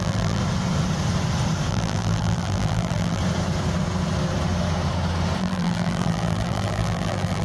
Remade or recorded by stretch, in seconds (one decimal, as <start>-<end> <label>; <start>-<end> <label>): 0.0-0.4 remade; 0.4-1.7 recorded; 1.7-3.2 remade; 3.2-5.4 recorded; 5.4-7.4 remade